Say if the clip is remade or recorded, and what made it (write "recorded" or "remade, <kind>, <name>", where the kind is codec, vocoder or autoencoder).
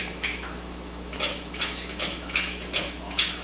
remade, autoencoder, DAC-VAE